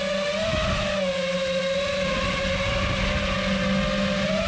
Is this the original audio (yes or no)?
yes